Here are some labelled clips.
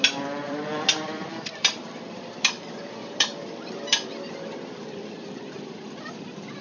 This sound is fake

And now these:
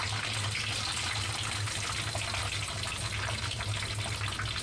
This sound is real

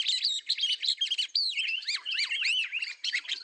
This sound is real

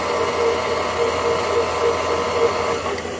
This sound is real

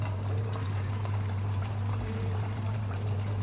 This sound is fake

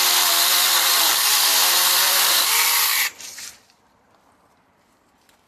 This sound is fake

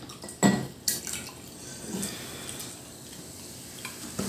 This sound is real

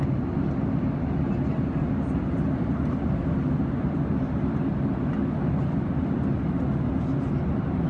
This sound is real